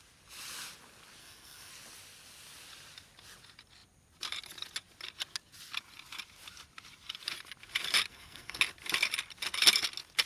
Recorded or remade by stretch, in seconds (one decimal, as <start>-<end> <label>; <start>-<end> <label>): 0.0-1.2 recorded; 1.2-1.7 remade; 1.7-8.1 recorded; 8.1-8.6 remade; 8.6-10.3 recorded